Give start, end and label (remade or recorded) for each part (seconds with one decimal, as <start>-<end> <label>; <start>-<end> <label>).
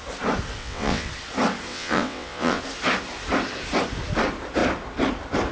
0.0-0.6 recorded; 0.6-1.1 remade; 1.1-1.7 recorded; 1.7-2.6 remade; 2.6-5.5 recorded